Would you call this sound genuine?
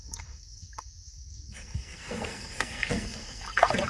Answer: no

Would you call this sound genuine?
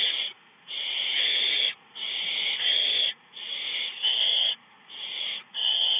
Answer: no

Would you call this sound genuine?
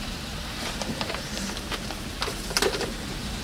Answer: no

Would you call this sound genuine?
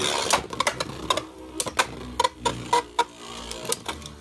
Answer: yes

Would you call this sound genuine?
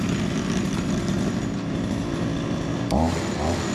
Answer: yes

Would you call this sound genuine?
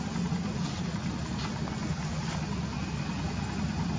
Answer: yes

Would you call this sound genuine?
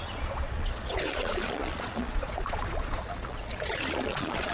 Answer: no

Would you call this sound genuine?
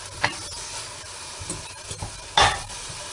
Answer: yes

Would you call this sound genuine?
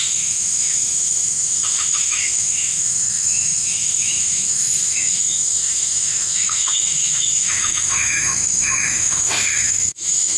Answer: no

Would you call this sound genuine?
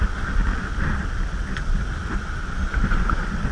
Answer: yes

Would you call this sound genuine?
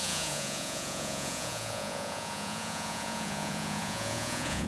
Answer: no